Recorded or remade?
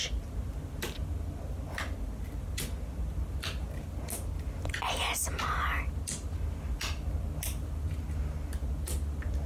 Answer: recorded